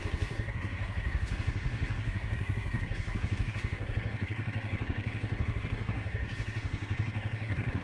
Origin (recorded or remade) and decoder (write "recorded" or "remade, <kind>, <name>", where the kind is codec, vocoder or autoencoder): remade, codec, SNAC